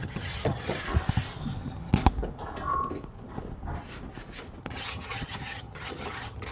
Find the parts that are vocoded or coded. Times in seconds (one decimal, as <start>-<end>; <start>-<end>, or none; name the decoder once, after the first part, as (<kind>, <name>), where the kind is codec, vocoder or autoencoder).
0.0-0.7 (vocoder, HiFi-GAN); 4.6-6.5